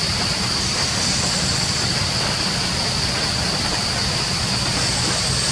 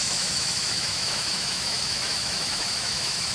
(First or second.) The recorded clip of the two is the first